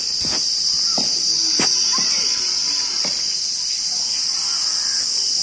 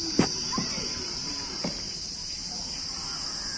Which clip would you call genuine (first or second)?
first